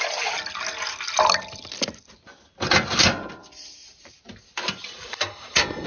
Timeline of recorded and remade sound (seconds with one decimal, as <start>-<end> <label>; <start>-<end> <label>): 0.0-5.9 recorded